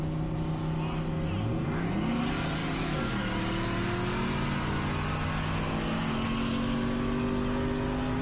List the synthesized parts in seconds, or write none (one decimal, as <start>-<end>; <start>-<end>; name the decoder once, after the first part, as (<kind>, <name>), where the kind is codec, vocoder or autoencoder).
2.6-3.2 (codec, DAC)